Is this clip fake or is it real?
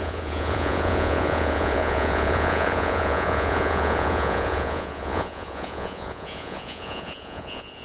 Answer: fake